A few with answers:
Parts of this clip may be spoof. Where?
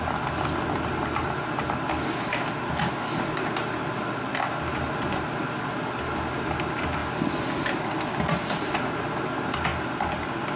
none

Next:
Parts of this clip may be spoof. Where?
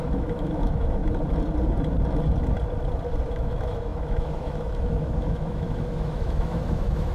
0.0-1.0 (autoencoder, DAC-VAE); 3.3-7.1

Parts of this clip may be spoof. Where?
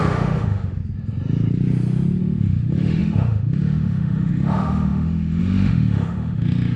0.0-0.8 (autoencoder, DAC-VAE); 2.2-6.8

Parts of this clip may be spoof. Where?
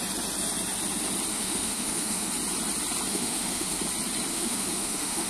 1.3-2.3 (autoencoder, DAC-VAE); 3.1-3.8; 4.3-5.3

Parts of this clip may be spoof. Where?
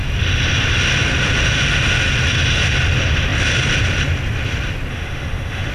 4.9-5.7 (autoencoder, DAC-VAE)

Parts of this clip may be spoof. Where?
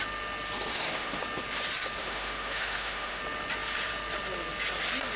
0.7-1.2 (autoencoder, DAC-VAE); 2.0-3.2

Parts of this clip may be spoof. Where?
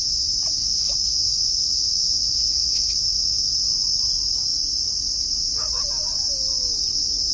0.6-3.4 (autoencoder, DAC-VAE)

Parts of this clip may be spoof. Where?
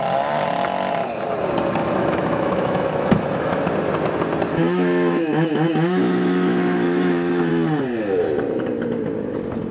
1.8-3.6 (autoencoder, DAC-VAE); 4.5-7.5